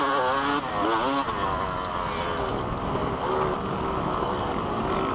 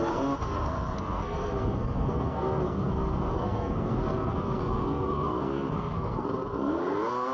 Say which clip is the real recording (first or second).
first